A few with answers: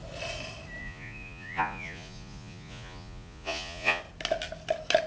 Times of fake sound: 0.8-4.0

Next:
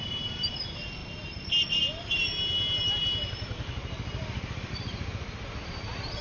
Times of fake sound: none

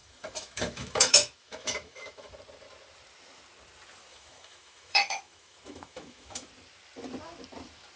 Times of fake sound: 0.0-2.3; 4.1-6.5

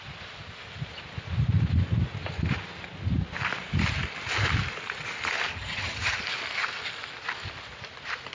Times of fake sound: 5.5-6.2

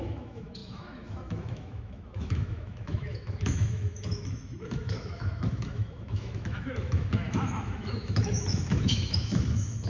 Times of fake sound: 0.0-9.9

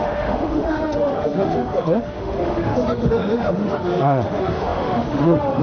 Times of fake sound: 0.0-5.6